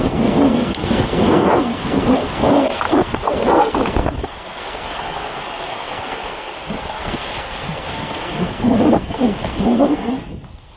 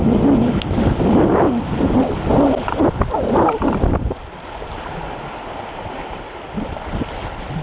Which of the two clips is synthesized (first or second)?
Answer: first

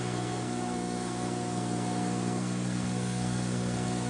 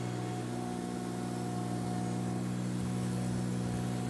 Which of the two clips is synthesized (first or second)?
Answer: first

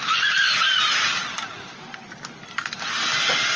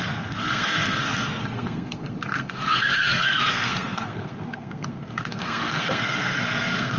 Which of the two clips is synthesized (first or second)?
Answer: second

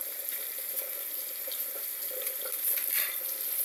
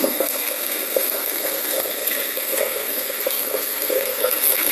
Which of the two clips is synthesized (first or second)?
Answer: second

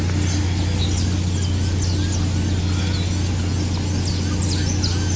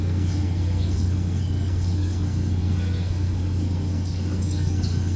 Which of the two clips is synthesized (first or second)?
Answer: second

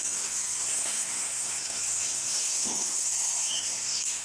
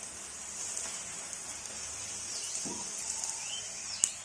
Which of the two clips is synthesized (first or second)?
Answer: first